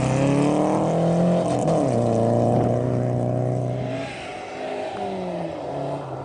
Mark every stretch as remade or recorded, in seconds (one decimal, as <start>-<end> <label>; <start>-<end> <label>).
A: 0.0-6.2 recorded

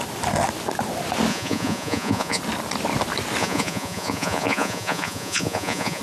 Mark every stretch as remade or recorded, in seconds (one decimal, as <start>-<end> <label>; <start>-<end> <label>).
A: 0.0-1.3 recorded; 1.3-2.4 remade; 2.4-3.4 recorded; 3.4-6.0 remade

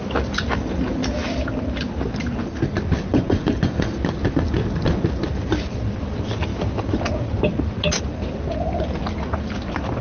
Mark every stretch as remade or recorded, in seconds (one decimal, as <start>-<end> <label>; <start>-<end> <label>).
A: 0.0-3.1 recorded; 3.1-3.9 remade; 3.9-10.0 recorded

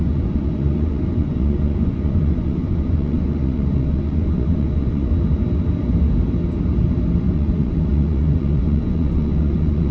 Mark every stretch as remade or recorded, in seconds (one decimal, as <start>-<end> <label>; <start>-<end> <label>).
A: 0.0-5.1 remade; 5.1-7.2 recorded; 7.2-9.9 remade

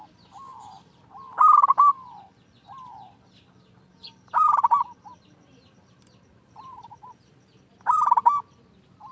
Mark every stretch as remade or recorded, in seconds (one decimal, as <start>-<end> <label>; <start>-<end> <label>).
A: 0.0-9.1 recorded